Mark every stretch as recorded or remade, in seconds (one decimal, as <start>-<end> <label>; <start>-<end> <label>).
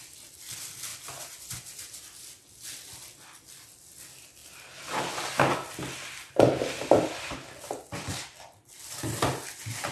0.0-9.9 recorded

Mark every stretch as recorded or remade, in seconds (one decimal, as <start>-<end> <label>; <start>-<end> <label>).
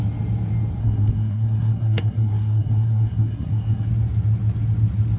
0.0-0.8 recorded; 0.8-3.9 remade; 3.9-5.2 recorded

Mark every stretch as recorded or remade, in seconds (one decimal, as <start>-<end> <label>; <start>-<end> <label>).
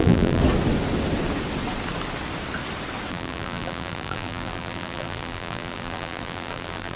0.0-0.4 remade; 0.4-3.1 recorded; 3.1-7.0 remade